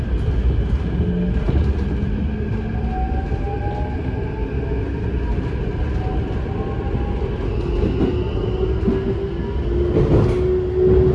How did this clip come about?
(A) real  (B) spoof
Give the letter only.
A